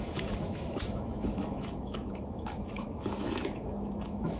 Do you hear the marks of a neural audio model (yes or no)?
yes